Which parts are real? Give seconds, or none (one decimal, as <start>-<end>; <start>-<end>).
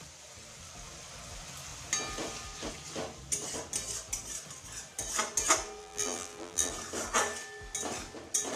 0.0-5.8; 6.7-8.6